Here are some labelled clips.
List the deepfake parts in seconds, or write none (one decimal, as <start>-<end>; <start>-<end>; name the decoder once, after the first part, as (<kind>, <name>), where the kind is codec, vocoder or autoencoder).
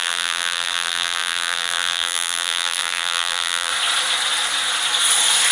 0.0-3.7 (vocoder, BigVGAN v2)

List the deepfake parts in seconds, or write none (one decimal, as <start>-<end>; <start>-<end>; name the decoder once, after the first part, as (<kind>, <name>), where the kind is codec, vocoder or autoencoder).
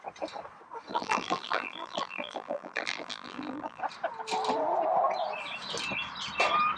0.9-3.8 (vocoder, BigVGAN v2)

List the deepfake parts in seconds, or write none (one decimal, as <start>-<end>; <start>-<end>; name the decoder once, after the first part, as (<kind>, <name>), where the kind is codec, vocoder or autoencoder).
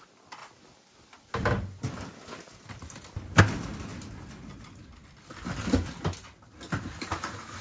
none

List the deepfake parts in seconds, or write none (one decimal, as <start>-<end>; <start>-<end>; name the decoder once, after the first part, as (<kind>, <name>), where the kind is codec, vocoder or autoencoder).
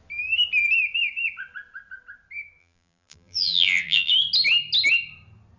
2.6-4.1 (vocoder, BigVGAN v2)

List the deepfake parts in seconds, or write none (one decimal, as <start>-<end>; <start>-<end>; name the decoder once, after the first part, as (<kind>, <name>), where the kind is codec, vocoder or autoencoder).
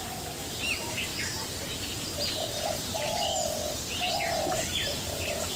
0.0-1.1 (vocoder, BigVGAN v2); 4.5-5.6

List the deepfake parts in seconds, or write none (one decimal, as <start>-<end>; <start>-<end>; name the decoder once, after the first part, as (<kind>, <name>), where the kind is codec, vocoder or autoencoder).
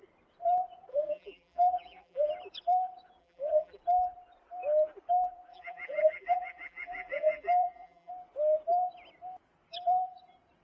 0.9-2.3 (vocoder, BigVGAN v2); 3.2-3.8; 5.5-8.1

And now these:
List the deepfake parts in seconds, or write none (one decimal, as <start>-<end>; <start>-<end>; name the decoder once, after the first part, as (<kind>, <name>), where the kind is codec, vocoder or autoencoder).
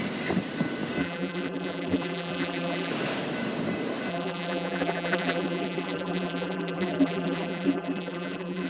1.0-2.9 (vocoder, BigVGAN v2); 4.1-8.7